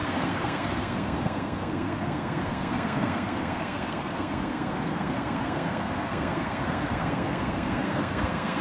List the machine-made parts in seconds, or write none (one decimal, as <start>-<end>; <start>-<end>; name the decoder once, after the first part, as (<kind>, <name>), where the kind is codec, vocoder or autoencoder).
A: 0.0-8.6 (codec, SNAC)